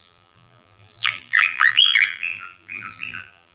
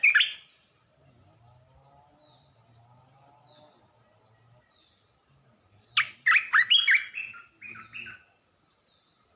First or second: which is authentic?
second